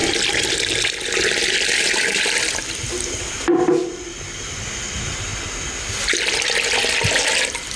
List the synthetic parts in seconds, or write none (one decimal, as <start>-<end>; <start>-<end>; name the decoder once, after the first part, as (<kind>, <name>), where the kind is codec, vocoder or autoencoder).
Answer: 0.0-5.3 (vocoder, BigVGAN v2); 7.1-7.8